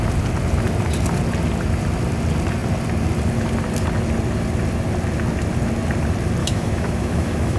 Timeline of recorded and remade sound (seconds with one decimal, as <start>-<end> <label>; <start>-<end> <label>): 0.0-6.4 recorded; 6.4-7.6 remade